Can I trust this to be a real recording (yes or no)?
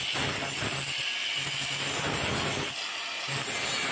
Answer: yes